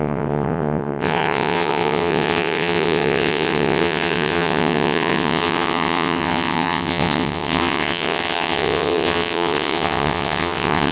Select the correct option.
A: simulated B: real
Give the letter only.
A